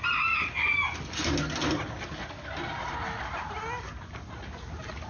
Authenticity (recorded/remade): recorded